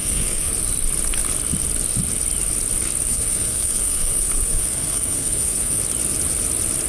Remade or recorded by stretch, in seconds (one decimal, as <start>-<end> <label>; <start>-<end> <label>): 0.0-0.5 remade; 0.5-3.1 recorded; 3.1-5.8 remade; 5.8-6.9 recorded